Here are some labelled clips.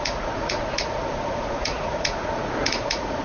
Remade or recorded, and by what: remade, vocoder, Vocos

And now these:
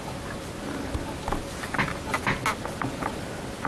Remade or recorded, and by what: recorded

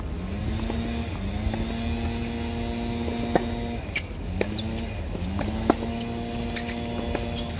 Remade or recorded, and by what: recorded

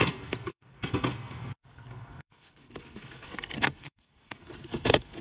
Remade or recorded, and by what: remade, codec, SNAC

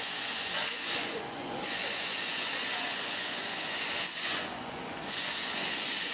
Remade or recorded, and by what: remade, vocoder, Vocos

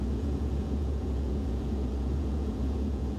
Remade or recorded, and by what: remade, vocoder, Vocos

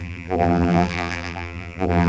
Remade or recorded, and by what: remade, vocoder, BigVGAN v2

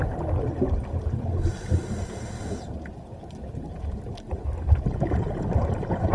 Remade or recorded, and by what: recorded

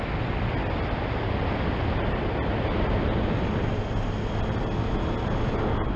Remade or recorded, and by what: recorded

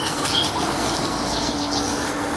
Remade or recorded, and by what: remade, codec, SNAC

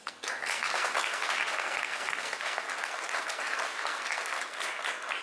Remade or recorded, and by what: remade, codec, SNAC